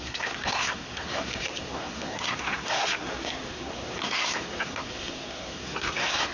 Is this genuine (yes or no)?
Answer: no